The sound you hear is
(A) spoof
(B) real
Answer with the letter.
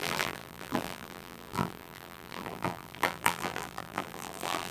A